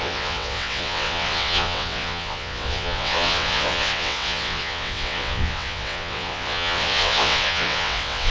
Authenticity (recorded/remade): remade